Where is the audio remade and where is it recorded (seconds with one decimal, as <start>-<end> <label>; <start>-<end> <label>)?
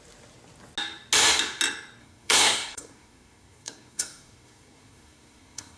0.0-2.0 recorded; 2.0-5.8 remade